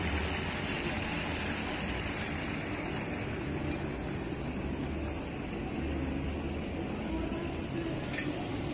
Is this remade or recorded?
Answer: recorded